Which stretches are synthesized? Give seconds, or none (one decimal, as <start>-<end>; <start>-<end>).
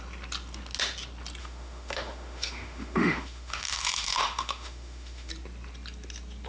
1.4-5.3